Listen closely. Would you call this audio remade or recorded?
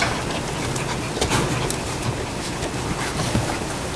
recorded